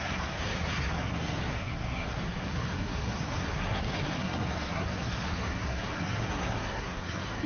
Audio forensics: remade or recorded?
remade